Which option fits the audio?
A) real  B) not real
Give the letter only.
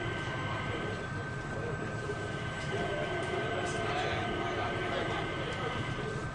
B